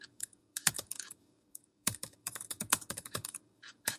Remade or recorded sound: remade